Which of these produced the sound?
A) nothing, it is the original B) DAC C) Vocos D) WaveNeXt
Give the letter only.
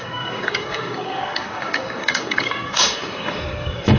B